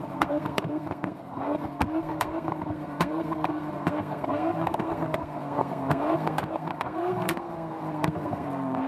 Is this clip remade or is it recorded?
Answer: remade